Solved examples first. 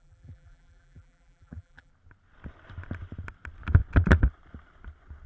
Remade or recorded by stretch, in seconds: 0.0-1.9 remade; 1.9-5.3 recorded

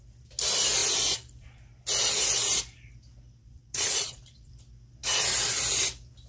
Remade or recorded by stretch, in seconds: 0.0-3.4 recorded; 3.4-4.5 remade; 4.5-6.3 recorded

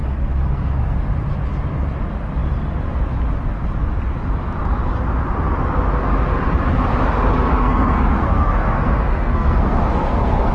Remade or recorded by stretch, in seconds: 0.0-1.0 remade; 1.0-7.5 recorded; 7.5-10.5 remade

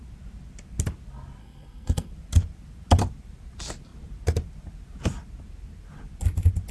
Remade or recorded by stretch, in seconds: 0.0-1.4 recorded; 1.4-2.1 remade; 2.1-6.7 recorded

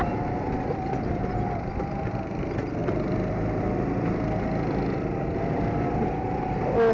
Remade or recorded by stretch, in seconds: 0.0-2.8 recorded; 2.8-3.6 remade; 3.6-6.9 recorded

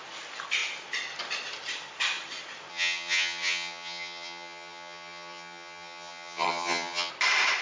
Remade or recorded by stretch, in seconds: 0.0-2.7 recorded; 2.7-7.1 remade; 7.1-7.6 recorded

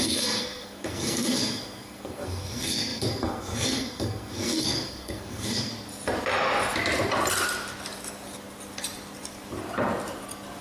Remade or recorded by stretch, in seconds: 0.0-5.7 remade; 5.7-10.6 recorded